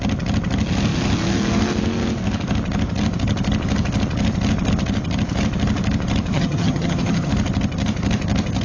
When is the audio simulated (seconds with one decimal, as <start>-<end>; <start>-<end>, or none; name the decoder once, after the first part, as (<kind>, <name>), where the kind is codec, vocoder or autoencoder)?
6.3-7.3 (vocoder, HiFi-GAN)